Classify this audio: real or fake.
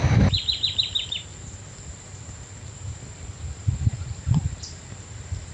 fake